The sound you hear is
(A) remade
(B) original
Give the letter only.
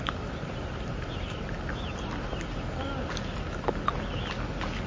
B